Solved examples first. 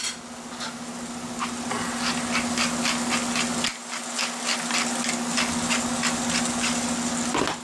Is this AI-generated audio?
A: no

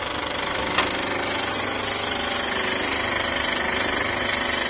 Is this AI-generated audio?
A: no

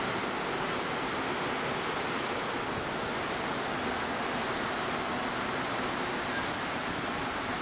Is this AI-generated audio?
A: no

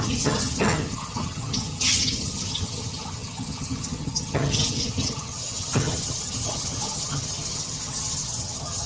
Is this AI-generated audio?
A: yes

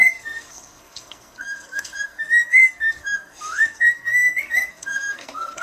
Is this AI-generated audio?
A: yes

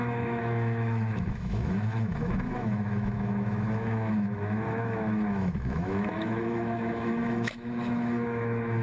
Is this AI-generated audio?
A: yes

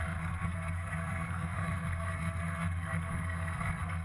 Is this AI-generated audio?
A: yes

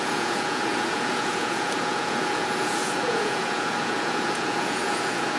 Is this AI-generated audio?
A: yes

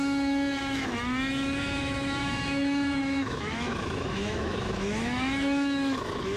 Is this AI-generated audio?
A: yes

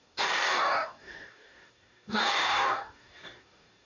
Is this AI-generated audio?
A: yes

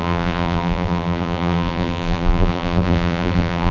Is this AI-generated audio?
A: yes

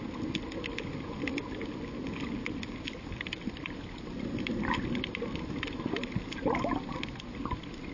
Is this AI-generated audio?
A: no